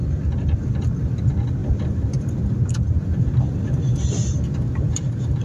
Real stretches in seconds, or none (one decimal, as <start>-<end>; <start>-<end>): 0.0-1.6; 2.3-3.0; 4.0-5.4